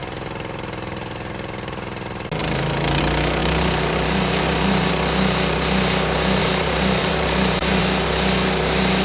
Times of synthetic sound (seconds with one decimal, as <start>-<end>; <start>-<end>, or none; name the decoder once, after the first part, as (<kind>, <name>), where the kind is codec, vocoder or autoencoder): 3.4-4.9 (vocoder, BigVGAN v2); 6.4-7.8